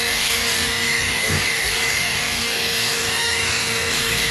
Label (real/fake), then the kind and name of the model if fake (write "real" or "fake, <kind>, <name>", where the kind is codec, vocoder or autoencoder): fake, codec, DAC